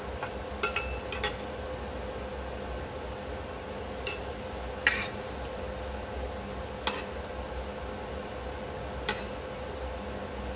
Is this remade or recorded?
recorded